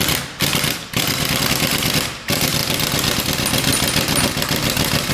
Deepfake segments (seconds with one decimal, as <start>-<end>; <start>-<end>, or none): 0.0-2.6; 3.2-3.7